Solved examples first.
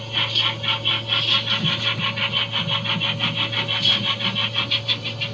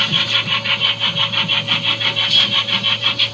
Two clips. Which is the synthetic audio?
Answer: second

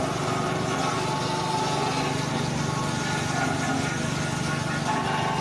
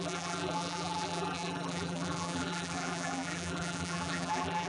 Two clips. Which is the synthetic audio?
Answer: second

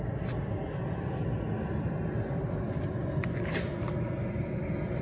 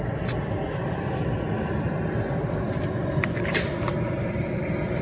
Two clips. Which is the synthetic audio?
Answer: second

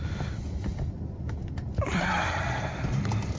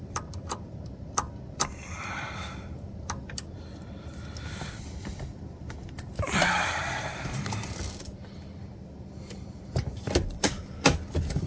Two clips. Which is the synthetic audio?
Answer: second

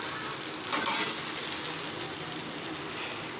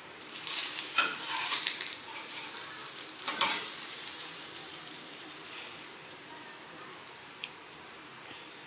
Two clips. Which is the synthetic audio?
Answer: second